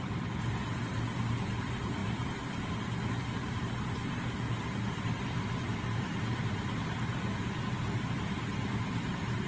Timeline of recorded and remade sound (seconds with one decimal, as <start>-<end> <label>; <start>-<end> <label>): 0.0-9.5 recorded